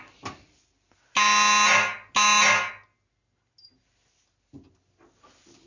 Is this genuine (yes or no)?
yes